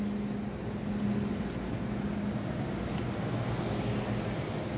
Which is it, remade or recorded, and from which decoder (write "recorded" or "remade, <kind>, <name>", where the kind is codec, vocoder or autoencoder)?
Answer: recorded